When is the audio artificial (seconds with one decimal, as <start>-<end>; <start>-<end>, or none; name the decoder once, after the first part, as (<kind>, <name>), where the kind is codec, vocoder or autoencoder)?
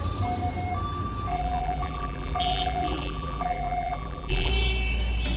1.3-4.5 (vocoder, BigVGAN v2)